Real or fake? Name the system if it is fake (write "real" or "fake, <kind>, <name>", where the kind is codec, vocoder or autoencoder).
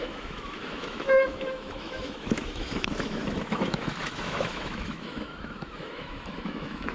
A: fake, autoencoder, DAC-VAE